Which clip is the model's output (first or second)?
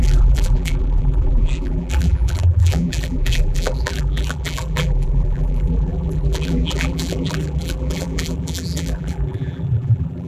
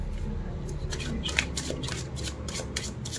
first